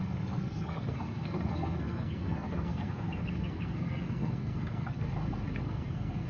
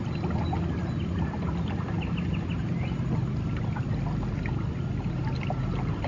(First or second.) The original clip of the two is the second